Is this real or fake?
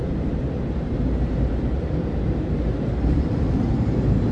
fake